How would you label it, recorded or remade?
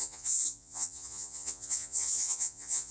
remade